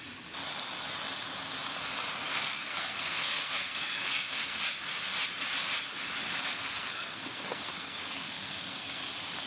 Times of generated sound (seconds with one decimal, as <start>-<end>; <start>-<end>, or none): 2.2-4.6; 6.5-9.0